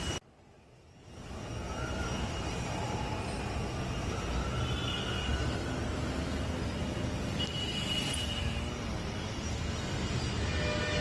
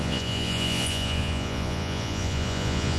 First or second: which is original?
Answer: first